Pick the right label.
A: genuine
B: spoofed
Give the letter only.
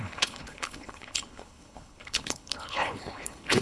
B